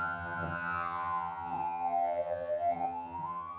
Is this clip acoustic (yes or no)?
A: no